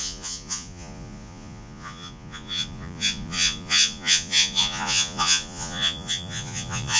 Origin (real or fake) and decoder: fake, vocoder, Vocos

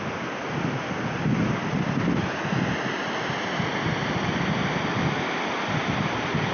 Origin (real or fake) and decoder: real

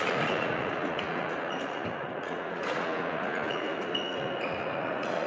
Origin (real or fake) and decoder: fake, vocoder, Vocos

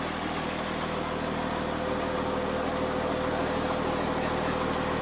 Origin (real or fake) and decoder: real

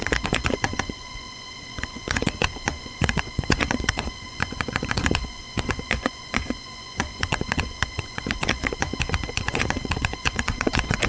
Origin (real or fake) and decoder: fake, vocoder, Vocos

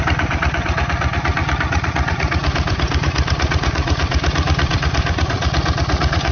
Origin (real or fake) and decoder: fake, vocoder, Vocos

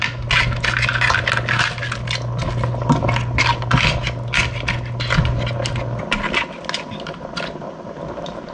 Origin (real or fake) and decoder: real